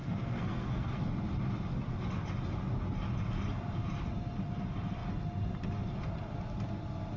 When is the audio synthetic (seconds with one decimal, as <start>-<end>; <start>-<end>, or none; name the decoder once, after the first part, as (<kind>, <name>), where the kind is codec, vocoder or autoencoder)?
0.0-1.0 (codec, SNAC)